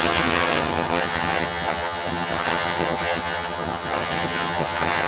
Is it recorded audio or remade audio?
remade